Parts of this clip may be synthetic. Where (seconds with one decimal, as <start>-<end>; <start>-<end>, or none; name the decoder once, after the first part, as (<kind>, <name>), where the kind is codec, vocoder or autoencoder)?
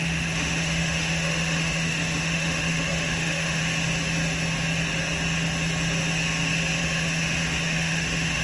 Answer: 0.0-3.6 (autoencoder, DAC-VAE); 6.8-8.4